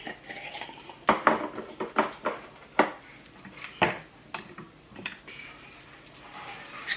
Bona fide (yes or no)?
yes